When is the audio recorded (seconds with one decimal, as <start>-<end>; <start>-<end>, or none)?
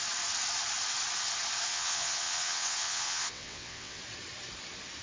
0.0-1.7; 4.0-5.0